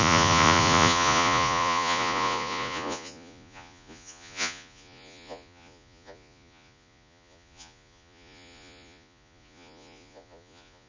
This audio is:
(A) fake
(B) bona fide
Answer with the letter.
A